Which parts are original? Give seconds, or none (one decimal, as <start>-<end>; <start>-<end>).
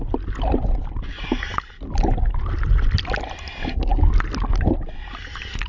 0.0-5.7